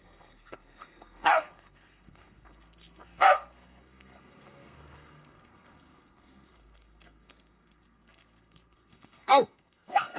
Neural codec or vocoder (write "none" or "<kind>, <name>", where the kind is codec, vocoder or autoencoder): codec, SNAC